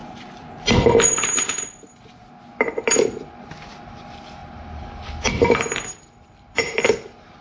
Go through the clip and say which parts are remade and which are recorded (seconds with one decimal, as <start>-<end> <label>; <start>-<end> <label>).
0.0-2.3 remade; 2.3-4.4 recorded; 4.4-6.8 remade; 6.8-7.4 recorded